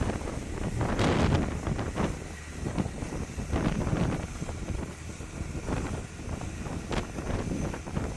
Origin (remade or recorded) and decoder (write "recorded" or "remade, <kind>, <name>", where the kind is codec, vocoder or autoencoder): recorded